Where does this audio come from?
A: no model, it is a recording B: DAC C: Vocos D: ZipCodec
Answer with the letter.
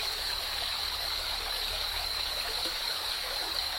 B